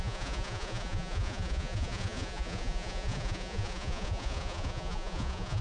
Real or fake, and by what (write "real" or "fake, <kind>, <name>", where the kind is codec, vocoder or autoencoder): fake, vocoder, Vocos